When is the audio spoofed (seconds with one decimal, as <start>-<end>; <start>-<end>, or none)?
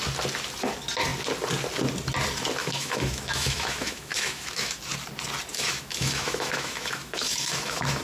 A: 2.6-4.8; 5.5-8.0